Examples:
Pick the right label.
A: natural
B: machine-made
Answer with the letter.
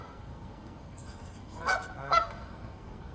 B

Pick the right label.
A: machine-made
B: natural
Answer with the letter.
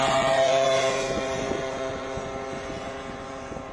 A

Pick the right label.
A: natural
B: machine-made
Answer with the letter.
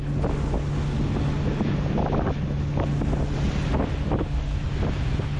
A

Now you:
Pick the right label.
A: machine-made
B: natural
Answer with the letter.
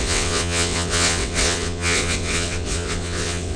A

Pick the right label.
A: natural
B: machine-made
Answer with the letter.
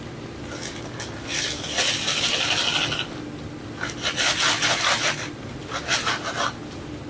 A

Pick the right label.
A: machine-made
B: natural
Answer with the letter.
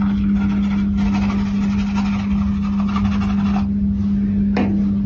B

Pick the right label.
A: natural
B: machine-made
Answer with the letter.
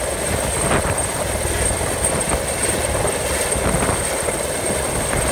A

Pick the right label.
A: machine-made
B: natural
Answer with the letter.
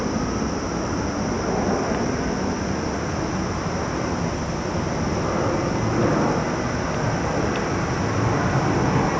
B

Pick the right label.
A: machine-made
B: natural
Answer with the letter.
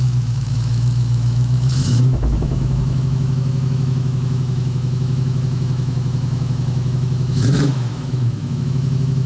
A